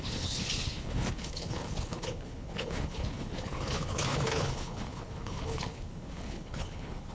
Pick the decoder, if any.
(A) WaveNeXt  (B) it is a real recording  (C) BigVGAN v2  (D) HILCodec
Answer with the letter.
D